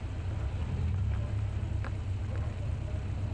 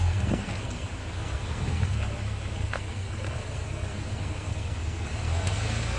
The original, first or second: first